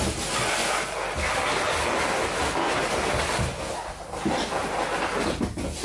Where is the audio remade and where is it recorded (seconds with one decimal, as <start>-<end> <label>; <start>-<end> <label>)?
0.0-5.8 recorded